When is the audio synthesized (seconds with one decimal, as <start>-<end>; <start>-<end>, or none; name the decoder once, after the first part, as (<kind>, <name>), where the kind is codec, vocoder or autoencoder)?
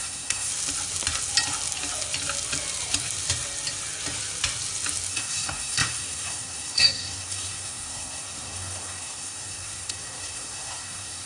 0.0-0.5 (codec, SNAC); 5.1-11.3